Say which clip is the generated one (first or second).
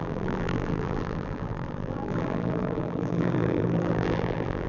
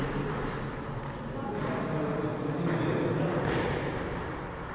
first